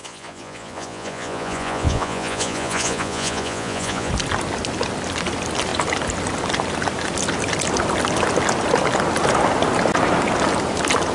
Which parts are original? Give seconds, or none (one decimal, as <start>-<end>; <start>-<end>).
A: 4.1-11.1